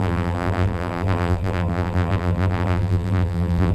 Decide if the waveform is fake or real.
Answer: fake